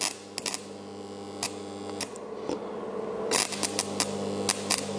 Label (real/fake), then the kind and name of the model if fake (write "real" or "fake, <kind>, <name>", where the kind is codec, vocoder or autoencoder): real